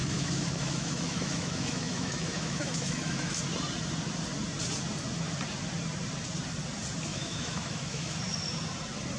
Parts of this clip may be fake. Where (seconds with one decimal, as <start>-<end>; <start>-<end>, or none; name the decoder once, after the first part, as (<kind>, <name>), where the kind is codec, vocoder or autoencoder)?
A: 0.0-3.4 (autoencoder, DAC-VAE); 7.1-8.2

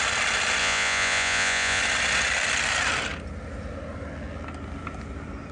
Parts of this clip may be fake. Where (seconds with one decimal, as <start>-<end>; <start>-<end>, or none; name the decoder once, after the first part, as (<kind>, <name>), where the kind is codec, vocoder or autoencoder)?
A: 0.6-1.8 (vocoder, Vocos)

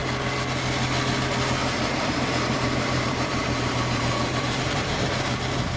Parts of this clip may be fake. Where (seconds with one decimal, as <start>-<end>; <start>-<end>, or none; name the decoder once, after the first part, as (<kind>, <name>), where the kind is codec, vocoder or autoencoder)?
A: 1.6-5.1 (vocoder, BigVGAN v2)

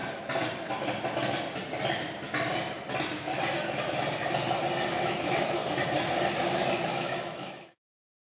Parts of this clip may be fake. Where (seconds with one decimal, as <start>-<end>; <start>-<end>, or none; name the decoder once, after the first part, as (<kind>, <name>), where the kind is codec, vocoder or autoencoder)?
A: 5.0-5.6 (autoencoder, DAC-VAE); 6.9-8.3

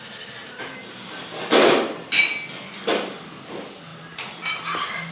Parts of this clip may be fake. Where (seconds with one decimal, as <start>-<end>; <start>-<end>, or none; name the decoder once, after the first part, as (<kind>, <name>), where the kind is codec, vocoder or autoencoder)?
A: 0.4-1.6 (vocoder, BigVGAN v2); 3.9-4.6

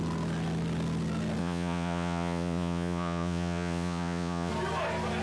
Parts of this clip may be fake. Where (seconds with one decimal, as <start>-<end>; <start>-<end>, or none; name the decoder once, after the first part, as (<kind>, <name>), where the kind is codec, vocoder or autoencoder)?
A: 1.4-4.5 (vocoder, Vocos)

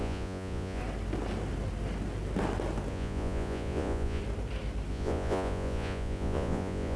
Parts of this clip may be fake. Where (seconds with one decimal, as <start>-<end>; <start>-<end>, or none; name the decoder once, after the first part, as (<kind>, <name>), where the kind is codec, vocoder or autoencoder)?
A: 0.0-0.8 (vocoder, Vocos); 2.9-4.2; 4.9-7.0